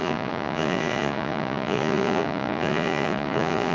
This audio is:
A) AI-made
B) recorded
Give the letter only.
A